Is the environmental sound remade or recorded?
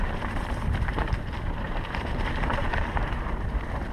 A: remade